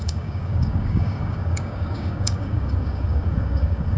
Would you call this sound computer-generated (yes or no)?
yes